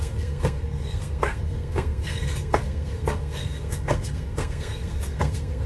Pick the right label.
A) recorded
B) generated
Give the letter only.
B